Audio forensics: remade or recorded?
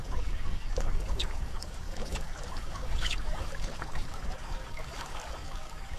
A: remade